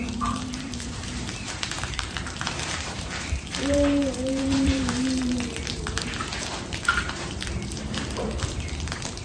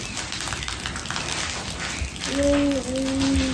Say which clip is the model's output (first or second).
first